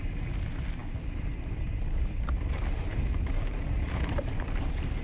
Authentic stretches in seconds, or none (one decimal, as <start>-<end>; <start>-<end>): 0.0-5.0